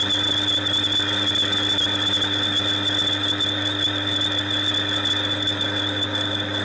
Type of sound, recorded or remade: recorded